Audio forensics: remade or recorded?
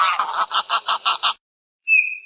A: recorded